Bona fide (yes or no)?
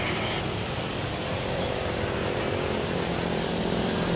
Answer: no